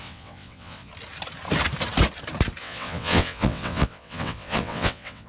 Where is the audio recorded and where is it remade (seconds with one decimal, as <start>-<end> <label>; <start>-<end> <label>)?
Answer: 0.0-0.9 remade; 0.9-2.6 recorded; 2.6-5.3 remade